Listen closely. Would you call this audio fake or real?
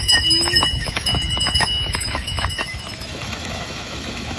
fake